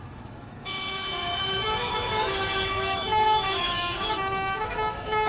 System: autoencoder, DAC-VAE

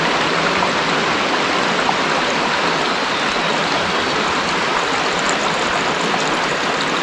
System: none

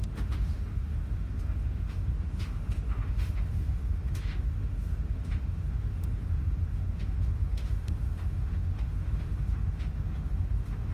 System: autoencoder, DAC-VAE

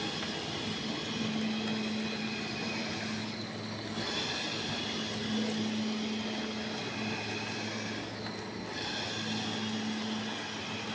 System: none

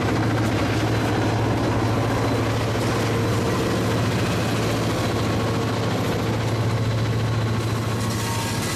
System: none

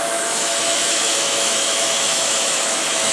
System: autoencoder, DAC-VAE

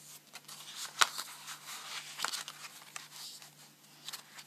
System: none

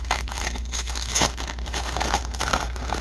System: autoencoder, DAC-VAE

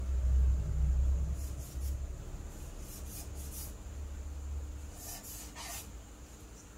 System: none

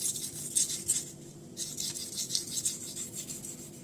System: none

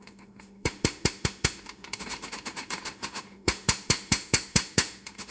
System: autoencoder, DAC-VAE